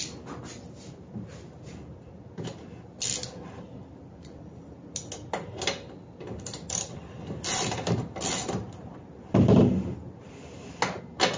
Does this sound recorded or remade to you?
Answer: recorded